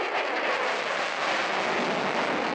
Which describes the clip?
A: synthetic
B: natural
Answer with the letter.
B